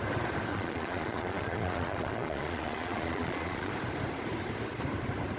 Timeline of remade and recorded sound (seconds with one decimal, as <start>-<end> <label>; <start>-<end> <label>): 0.0-0.5 recorded; 0.5-3.7 remade; 3.7-5.4 recorded